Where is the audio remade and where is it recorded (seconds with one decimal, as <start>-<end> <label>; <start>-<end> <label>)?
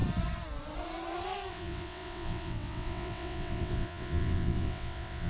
0.0-1.5 recorded; 1.5-5.3 remade